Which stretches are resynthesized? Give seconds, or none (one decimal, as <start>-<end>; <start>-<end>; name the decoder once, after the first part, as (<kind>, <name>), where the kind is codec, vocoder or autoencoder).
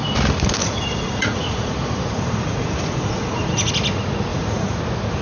0.6-3.7 (vocoder, Vocos); 4.3-4.8